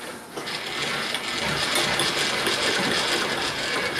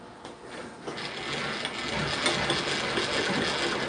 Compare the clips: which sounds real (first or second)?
second